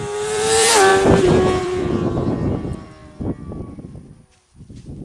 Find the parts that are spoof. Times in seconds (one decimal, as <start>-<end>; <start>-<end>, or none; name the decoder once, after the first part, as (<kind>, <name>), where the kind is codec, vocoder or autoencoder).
0.0-0.9 (vocoder, BigVGAN v2); 1.6-3.0; 4.4-5.0